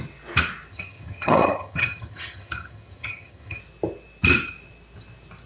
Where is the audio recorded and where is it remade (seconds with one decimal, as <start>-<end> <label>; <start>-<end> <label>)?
0.0-0.7 recorded; 0.7-3.6 remade; 3.6-5.5 recorded